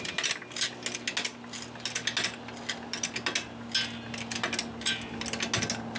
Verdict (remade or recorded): recorded